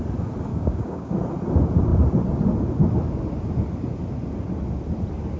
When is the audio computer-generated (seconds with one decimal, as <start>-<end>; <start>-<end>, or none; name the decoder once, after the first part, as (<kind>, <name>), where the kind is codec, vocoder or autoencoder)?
0.5-1.1 (codec, DAC)